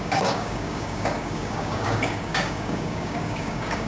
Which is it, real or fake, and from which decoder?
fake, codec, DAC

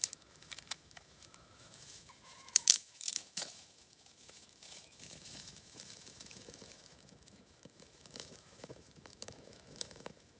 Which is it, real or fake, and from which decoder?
fake, autoencoder, DAC-VAE